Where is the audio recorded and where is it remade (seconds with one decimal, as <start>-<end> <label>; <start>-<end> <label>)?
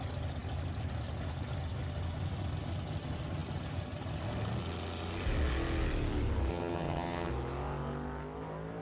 0.0-6.5 recorded; 6.5-7.3 remade; 7.3-8.8 recorded